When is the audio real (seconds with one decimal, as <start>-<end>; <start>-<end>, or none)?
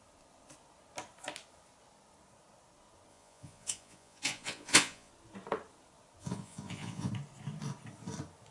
0.0-3.1; 5.1-6.2; 7.1-8.5